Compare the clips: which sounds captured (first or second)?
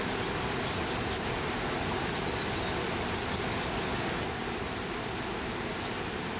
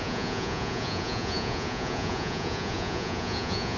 first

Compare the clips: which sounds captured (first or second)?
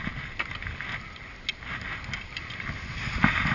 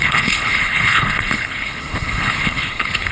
first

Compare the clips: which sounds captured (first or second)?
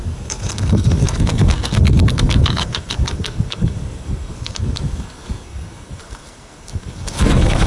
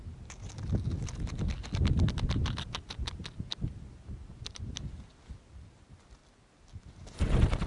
second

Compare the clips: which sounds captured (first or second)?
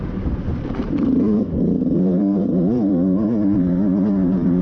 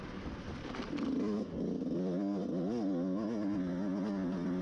second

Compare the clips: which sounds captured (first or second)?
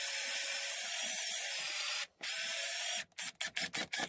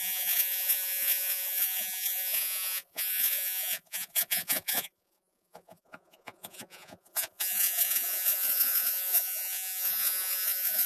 first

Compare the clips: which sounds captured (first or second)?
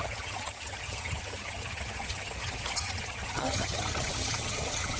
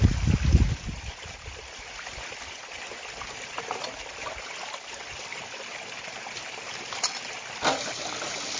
second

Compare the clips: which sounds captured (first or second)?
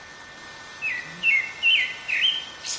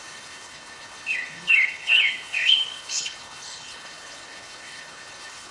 first